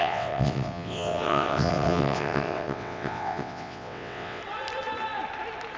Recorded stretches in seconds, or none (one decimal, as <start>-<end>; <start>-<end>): 4.4-5.8